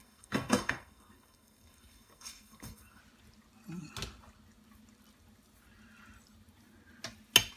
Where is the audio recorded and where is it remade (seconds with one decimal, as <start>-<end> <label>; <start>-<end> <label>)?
0.0-3.0 remade; 3.0-7.6 recorded